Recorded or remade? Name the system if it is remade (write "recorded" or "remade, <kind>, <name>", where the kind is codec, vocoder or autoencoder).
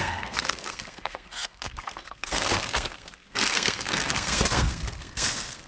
remade, codec, SNAC